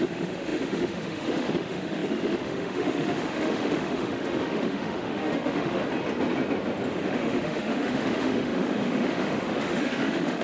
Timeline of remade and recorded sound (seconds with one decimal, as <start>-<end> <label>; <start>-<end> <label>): 0.0-5.8 remade; 5.8-7.0 recorded; 7.0-10.4 remade